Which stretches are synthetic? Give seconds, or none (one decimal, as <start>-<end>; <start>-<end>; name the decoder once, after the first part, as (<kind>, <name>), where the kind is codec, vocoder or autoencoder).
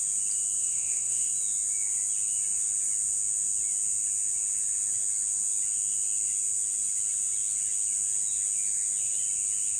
0.6-1.3 (vocoder, WaveNeXt)